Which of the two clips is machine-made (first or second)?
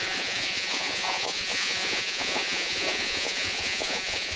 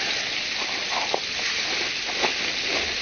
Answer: first